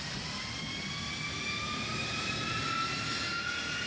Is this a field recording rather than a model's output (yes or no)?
yes